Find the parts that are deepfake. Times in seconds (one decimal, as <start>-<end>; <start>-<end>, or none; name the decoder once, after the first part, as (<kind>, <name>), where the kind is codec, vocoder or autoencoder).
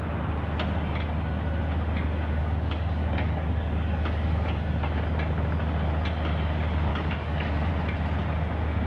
2.4-4.5 (codec, DAC); 6.9-7.7